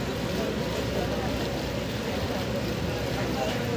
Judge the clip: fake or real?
real